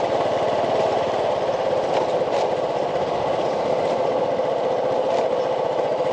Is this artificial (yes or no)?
no